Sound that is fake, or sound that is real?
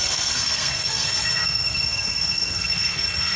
fake